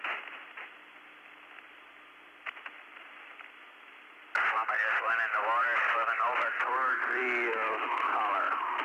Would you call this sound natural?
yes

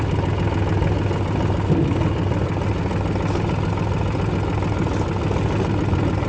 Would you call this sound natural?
yes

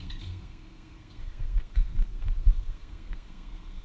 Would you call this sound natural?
no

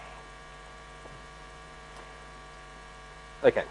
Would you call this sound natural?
no